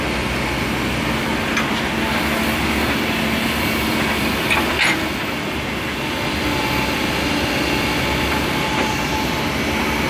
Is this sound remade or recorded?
recorded